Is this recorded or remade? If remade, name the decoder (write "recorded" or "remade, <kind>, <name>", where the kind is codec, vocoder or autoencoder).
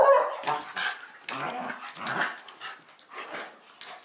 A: recorded